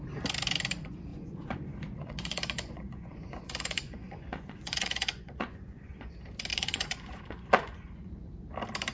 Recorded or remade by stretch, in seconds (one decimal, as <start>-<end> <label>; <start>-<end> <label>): 0.0-1.1 recorded; 1.1-6.1 remade; 6.1-6.5 recorded; 6.5-8.3 remade; 8.3-8.9 recorded